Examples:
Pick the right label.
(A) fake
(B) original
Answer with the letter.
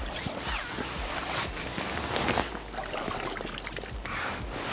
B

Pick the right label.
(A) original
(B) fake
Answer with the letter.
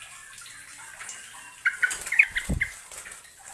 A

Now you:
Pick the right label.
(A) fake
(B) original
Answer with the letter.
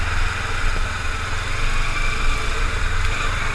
B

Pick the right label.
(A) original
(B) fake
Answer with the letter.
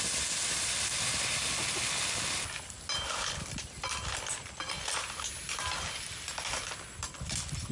A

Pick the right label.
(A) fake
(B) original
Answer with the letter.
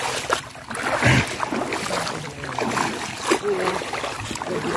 B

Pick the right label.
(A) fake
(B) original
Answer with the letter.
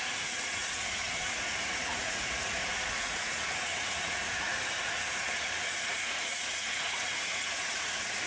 A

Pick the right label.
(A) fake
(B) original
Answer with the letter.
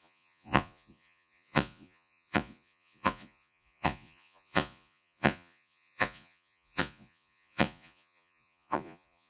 A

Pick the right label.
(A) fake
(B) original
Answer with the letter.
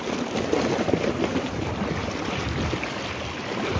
B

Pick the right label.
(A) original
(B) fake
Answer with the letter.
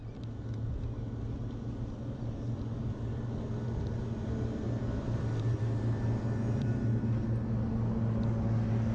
A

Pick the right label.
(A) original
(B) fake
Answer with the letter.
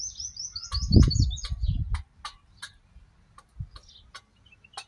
A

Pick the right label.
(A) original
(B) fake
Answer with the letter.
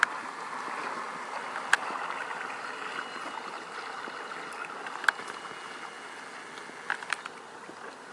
A